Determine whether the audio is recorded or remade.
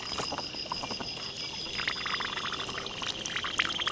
recorded